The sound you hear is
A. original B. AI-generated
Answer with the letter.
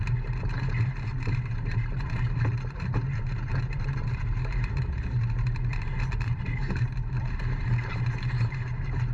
B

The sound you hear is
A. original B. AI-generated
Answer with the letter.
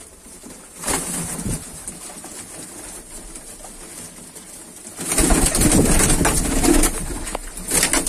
A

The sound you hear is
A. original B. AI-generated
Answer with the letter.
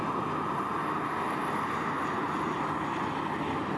A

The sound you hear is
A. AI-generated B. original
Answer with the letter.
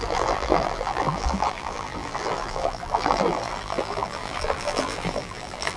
A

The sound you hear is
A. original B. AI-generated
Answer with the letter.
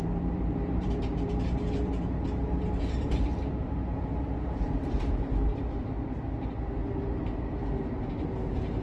B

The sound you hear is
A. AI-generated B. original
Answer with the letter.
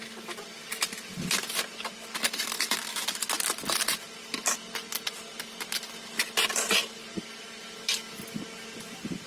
B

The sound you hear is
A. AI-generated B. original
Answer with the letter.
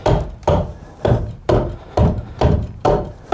A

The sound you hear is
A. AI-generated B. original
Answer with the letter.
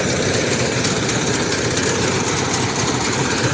B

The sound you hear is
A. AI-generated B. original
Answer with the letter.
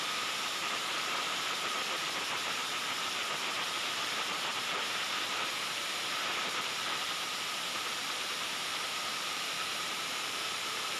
A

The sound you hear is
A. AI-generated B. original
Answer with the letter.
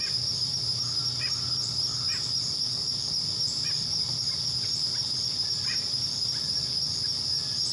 A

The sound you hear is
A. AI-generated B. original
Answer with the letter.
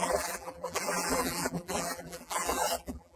A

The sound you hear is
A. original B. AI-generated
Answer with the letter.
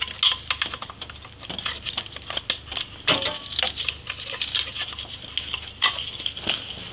A